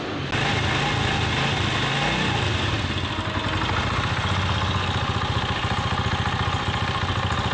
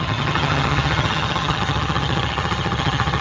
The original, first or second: first